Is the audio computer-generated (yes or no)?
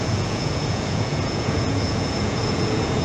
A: yes